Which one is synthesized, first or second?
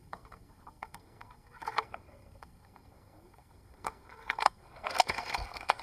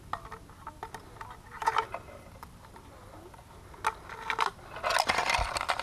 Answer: first